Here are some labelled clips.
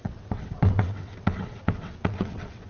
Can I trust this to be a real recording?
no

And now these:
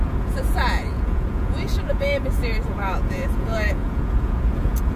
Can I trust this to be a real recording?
no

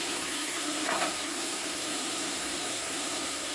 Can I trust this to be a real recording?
no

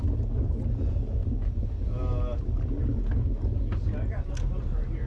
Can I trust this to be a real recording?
yes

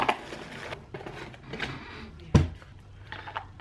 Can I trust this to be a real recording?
yes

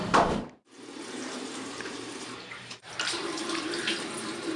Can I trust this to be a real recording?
no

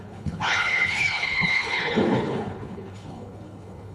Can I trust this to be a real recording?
no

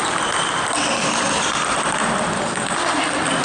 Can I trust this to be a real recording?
yes